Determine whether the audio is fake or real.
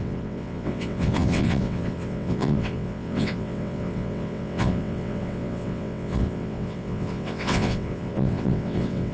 fake